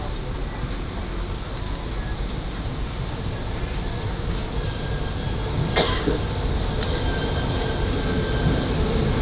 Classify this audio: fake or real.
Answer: real